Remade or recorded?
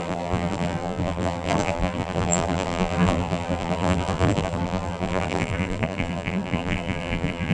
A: remade